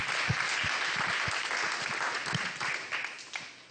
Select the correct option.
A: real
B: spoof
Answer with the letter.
A